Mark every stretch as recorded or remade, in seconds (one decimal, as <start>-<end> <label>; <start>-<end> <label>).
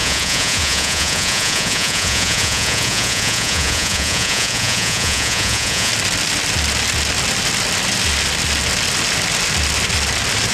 0.0-5.9 remade; 5.9-10.5 recorded